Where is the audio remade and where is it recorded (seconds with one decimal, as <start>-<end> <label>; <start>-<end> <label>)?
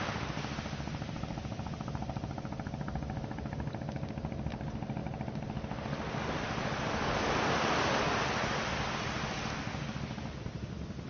0.0-11.1 recorded